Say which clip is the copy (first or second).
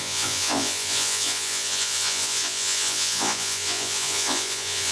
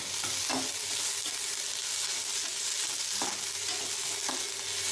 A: first